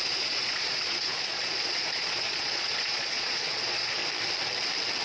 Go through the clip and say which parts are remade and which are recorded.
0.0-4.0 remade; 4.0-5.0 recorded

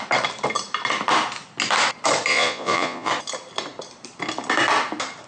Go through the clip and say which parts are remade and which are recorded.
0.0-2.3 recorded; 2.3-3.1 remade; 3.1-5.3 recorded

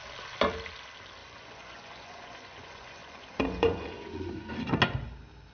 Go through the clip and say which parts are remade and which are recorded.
0.0-1.2 recorded; 1.2-4.5 remade; 4.5-5.5 recorded